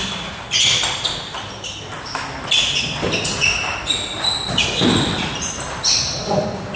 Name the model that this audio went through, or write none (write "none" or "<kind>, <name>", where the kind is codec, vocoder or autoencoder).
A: none